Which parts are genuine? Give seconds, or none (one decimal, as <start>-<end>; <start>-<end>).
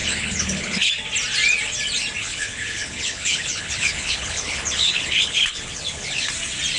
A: 0.9-2.2; 6.3-6.8